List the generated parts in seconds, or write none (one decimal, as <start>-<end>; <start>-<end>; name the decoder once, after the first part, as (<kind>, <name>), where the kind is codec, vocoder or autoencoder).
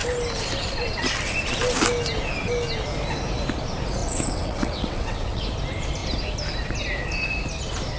4.0-5.4 (vocoder, WaveNeXt)